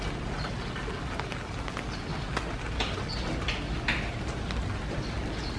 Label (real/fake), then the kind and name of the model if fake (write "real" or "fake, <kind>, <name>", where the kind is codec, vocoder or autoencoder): real